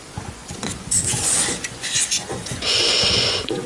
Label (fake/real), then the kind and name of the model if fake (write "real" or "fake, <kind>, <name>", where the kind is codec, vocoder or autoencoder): fake, vocoder, Vocos